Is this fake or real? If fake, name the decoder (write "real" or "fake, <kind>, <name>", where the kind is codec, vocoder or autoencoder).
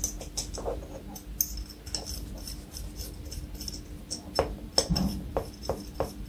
real